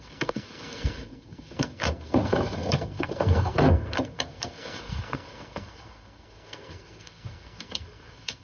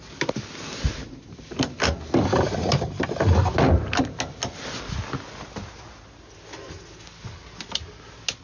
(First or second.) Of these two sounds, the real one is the second